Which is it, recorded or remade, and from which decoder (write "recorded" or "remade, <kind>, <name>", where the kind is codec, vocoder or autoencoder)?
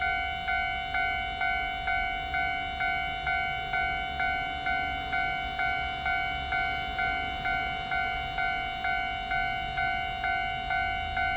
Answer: recorded